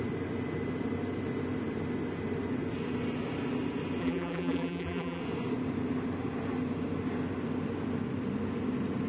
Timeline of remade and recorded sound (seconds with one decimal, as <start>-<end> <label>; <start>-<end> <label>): 0.0-4.0 recorded; 4.0-5.2 remade; 5.2-9.1 recorded